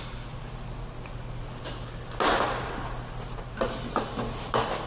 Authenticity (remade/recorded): recorded